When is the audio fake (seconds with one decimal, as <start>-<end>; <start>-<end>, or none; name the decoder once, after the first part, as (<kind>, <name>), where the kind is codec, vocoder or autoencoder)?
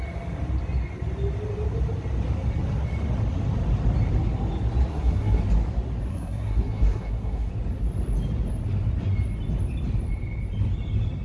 4.9-5.4 (codec, SNAC); 6.1-7.5